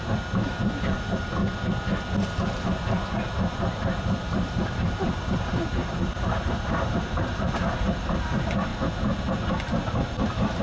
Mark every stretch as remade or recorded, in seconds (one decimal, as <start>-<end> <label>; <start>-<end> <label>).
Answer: 0.0-1.4 remade; 1.4-3.5 recorded; 3.5-8.7 remade; 8.7-10.6 recorded